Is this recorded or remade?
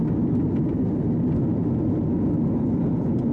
recorded